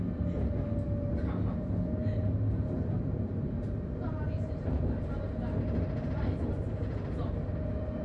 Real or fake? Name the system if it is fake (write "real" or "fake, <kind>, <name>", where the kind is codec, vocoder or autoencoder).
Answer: real